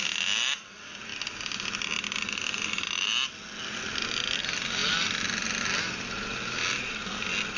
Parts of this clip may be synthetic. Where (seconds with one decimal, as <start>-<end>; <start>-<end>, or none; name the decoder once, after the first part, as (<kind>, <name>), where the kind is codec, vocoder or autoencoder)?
4.8-5.8 (vocoder, BigVGAN v2)